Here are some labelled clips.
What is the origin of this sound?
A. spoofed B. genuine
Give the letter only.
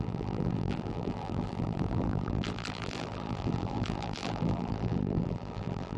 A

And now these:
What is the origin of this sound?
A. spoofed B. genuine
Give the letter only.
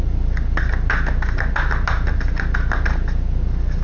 B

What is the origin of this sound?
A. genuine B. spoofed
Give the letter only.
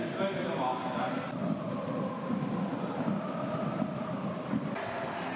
A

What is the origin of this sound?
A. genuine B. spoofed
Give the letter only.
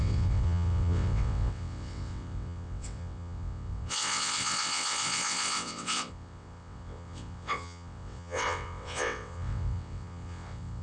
B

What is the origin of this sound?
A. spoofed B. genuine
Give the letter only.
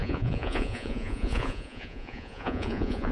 A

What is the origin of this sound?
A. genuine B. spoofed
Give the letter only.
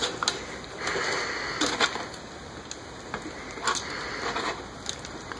A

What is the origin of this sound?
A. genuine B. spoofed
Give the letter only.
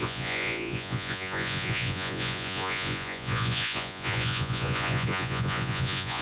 B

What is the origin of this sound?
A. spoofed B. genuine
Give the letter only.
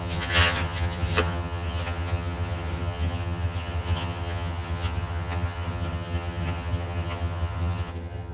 A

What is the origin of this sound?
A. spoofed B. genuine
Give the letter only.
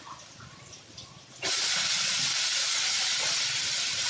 B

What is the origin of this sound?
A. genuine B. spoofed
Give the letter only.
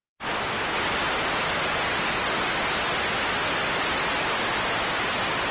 A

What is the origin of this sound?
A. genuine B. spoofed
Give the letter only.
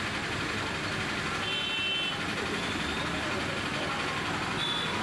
A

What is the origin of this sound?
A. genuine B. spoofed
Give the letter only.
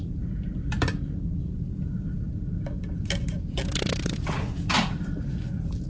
B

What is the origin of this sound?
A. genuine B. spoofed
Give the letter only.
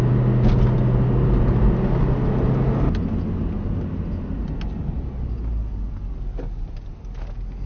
A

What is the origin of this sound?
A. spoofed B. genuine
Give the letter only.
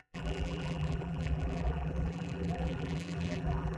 A